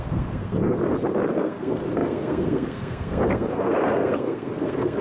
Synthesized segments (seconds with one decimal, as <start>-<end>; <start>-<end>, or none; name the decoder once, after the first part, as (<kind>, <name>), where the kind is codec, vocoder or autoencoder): 0.0-0.8 (codec, SNAC); 1.3-5.0